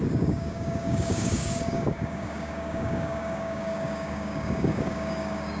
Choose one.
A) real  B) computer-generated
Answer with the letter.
B